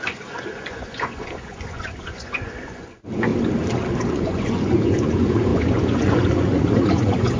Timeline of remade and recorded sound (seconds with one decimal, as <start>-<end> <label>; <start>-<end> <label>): 0.0-3.3 remade; 3.3-4.1 recorded; 4.1-7.4 remade